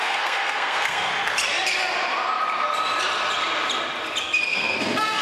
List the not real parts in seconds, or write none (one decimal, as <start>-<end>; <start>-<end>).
0.0-1.1; 4.2-5.2